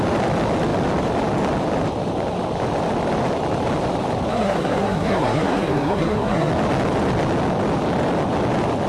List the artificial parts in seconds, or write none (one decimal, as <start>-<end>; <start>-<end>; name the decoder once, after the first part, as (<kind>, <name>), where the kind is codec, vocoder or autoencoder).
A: 4.3-6.5 (codec, SNAC)